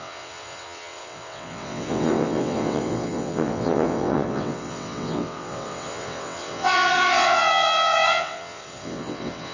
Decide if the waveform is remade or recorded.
remade